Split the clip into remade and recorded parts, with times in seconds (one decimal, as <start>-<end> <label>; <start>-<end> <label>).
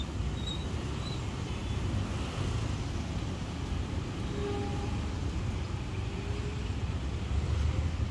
0.0-8.1 recorded